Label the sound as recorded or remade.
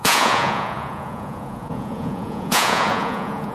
remade